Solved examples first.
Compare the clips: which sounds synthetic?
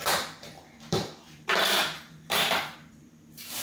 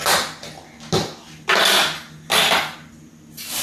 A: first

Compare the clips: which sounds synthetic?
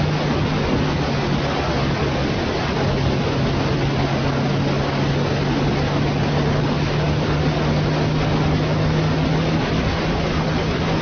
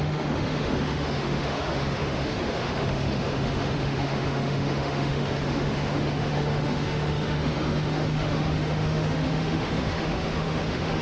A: second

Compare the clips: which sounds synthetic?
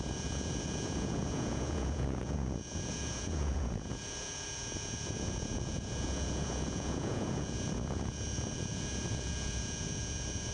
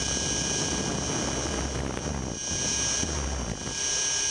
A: first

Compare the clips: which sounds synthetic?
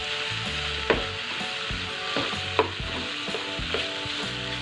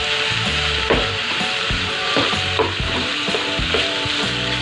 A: second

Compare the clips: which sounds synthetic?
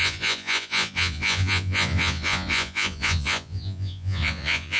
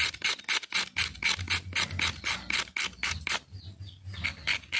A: first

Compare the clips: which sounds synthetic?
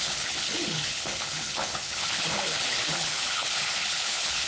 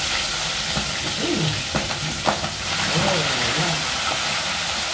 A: first